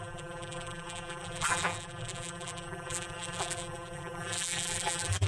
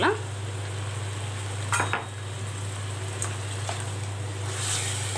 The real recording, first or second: second